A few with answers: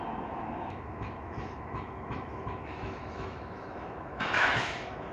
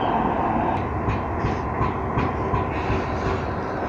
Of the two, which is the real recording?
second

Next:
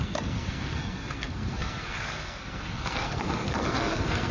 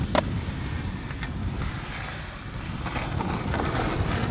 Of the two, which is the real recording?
second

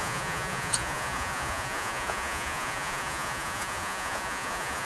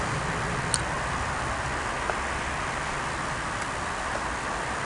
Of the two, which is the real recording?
second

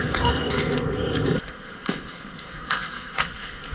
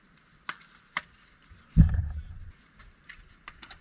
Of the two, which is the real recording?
second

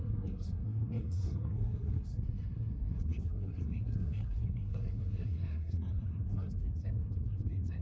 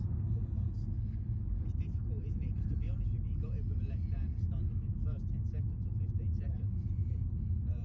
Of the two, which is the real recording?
second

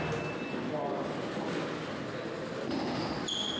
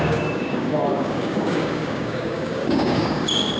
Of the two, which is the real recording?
first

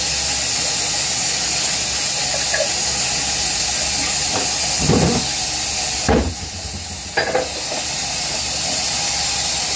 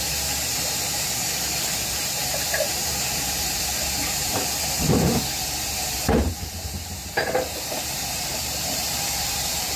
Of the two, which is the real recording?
first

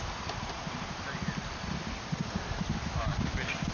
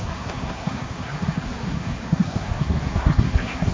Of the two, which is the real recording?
first